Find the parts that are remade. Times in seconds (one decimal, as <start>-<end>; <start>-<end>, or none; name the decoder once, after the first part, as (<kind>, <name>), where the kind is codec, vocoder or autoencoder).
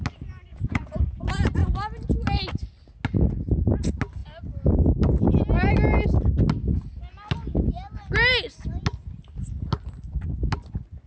0.5-1.2 (vocoder, Vocos)